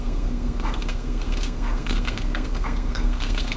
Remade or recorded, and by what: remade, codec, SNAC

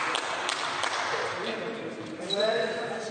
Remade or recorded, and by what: recorded